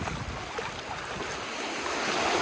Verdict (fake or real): real